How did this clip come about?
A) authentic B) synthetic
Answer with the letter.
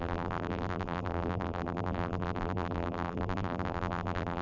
B